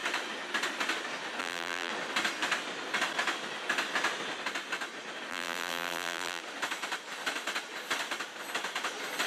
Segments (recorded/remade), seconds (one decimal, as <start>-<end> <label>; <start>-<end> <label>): 0.0-1.4 recorded; 1.4-1.9 remade; 1.9-5.3 recorded; 5.3-6.4 remade; 6.4-9.3 recorded